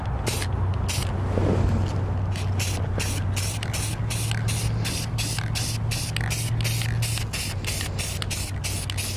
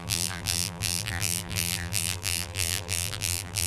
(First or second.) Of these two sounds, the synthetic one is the second